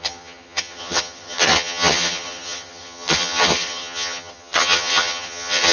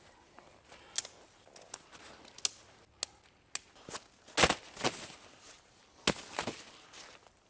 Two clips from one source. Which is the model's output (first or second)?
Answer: first